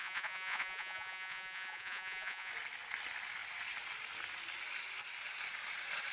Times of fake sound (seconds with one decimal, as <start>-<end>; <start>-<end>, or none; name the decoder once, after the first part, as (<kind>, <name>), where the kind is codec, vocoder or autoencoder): 0.0-2.5 (vocoder, Vocos)